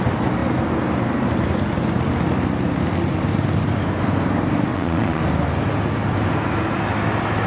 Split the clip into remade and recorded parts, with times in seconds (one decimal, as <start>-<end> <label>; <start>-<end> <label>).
0.0-4.7 recorded; 4.7-5.2 remade; 5.2-7.5 recorded